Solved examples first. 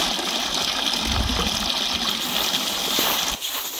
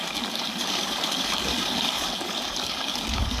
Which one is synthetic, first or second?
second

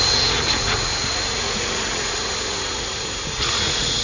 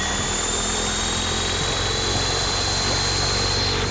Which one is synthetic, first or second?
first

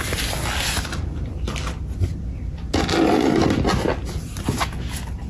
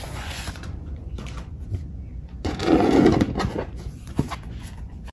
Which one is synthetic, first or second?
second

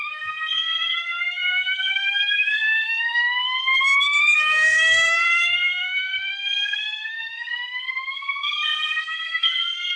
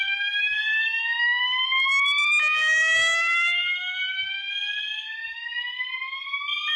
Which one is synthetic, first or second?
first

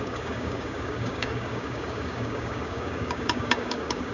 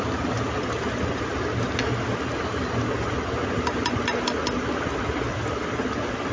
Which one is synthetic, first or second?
first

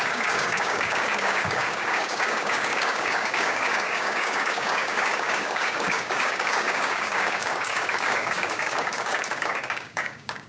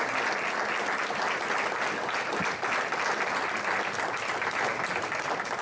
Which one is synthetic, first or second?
first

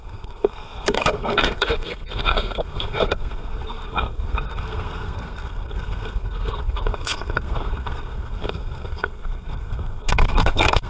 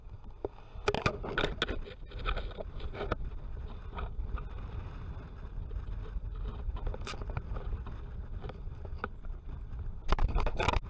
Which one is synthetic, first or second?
first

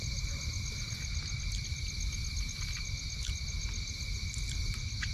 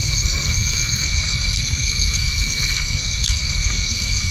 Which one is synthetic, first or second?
second